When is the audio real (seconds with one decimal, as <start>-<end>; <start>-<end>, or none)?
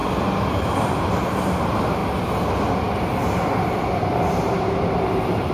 0.0-0.5; 2.0-4.2